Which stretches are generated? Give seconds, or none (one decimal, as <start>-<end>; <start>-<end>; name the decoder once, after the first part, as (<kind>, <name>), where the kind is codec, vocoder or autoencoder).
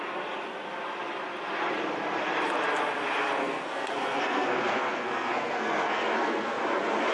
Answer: 3.4-6.6 (codec, SNAC)